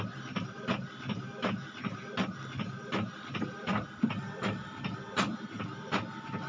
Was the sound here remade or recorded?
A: recorded